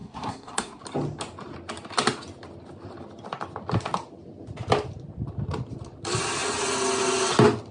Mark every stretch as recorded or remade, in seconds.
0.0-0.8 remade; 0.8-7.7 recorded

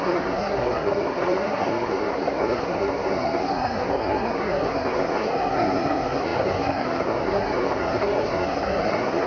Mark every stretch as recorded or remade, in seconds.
0.0-9.3 remade

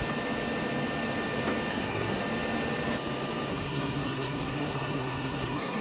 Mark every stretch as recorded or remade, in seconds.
0.0-1.7 recorded; 1.7-2.2 remade; 2.2-3.5 recorded; 3.5-5.8 remade

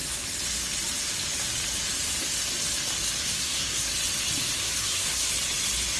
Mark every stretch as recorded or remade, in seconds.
0.0-3.2 recorded; 3.2-3.9 remade; 3.9-4.6 recorded; 4.6-5.3 remade; 5.3-6.0 recorded

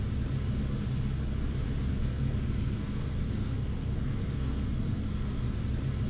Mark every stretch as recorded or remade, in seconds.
0.0-1.9 recorded; 1.9-5.6 remade; 5.6-6.1 recorded

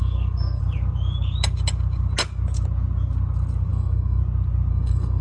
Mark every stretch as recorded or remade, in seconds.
0.0-0.6 remade; 0.6-3.7 recorded; 3.7-4.2 remade; 4.2-4.7 recorded; 4.7-5.2 remade